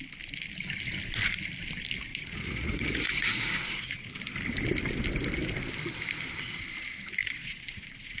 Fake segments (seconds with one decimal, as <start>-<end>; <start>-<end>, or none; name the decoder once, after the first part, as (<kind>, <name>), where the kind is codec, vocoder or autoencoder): 2.1-4.1 (vocoder, Vocos); 7.2-8.2